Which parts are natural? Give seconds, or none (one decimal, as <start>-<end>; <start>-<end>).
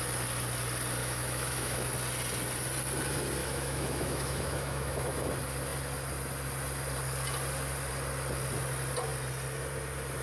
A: 0.0-1.0; 1.9-3.4; 5.3-10.2